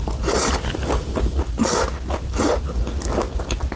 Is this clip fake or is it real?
real